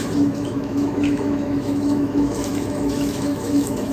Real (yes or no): no